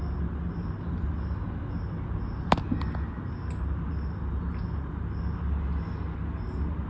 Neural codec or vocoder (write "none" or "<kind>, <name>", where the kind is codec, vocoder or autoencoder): none